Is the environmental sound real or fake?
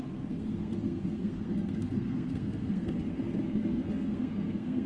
fake